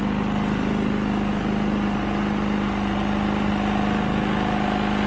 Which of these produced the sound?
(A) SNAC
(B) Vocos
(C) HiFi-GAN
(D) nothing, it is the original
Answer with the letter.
D